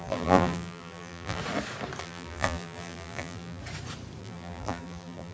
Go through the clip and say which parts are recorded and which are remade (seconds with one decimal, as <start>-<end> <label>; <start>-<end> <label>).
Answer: 0.0-1.4 remade; 1.4-2.0 recorded; 2.0-3.6 remade; 3.6-4.2 recorded; 4.2-5.3 remade